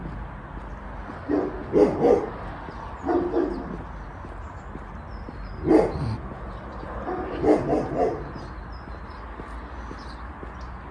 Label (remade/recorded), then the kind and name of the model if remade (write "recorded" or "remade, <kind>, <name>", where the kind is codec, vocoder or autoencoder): recorded